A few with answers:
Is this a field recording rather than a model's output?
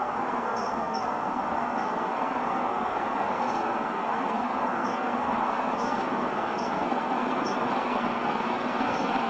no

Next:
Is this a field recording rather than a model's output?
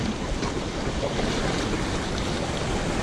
yes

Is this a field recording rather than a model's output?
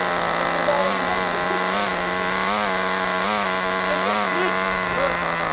yes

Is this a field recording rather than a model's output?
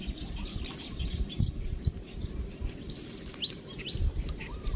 no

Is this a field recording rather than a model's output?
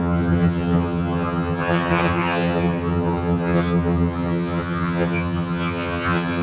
no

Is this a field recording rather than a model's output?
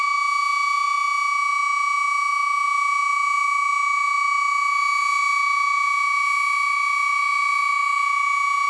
yes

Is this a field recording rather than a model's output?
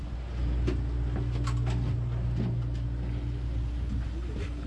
yes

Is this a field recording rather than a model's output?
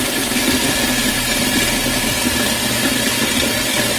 yes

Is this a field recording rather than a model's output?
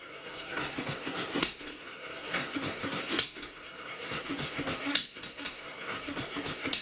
no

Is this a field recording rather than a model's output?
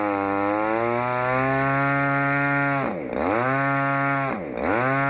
yes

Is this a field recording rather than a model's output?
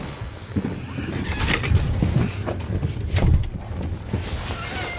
yes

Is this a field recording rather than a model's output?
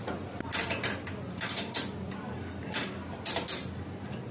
yes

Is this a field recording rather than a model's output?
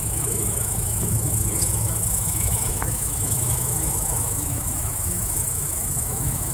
no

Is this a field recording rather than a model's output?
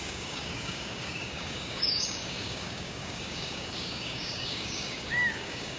no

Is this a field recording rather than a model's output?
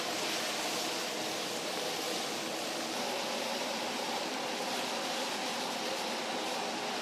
yes